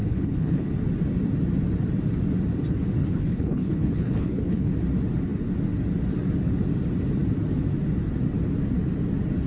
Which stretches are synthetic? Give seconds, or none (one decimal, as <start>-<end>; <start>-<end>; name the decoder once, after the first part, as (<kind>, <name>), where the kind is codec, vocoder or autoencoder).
0.0-0.7 (codec, HILCodec); 3.0-4.7